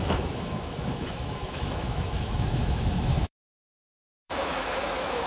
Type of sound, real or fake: fake